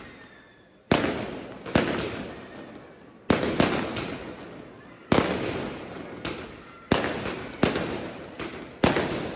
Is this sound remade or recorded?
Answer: recorded